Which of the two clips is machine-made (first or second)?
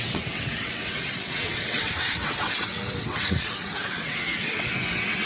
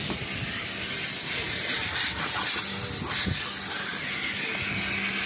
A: first